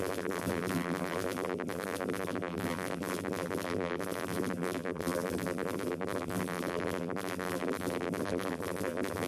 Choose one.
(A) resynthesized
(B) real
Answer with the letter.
A